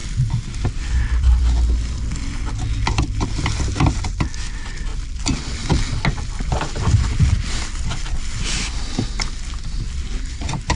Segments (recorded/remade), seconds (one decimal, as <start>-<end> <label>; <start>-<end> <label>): 0.0-10.7 recorded